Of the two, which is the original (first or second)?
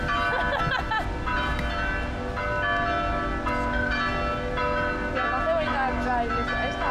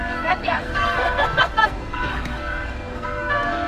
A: first